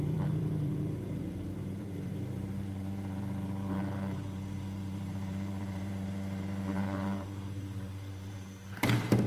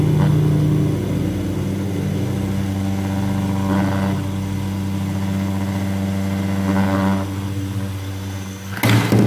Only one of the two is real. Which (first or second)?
second